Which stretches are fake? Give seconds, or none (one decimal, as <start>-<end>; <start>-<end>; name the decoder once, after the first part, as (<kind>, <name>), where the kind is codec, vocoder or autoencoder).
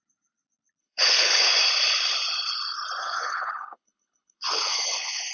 0.8-1.5 (codec, HILCodec); 3.0-5.3